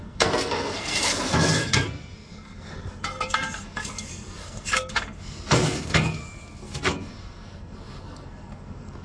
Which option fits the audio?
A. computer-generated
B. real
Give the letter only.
A